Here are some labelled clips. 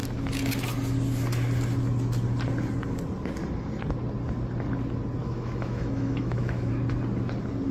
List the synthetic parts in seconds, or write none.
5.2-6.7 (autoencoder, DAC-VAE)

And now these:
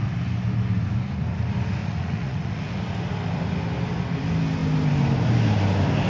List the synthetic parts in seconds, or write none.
1.8-2.7 (vocoder, Vocos)

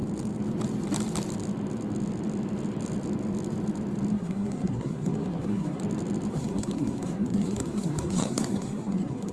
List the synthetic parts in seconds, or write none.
4.1-5.8 (codec, SNAC); 6.3-9.3

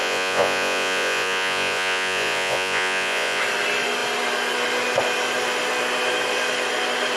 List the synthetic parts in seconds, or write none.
0.0-3.4 (vocoder, Vocos)